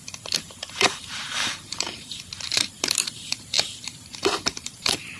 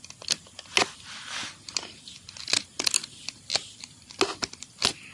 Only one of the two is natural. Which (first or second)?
second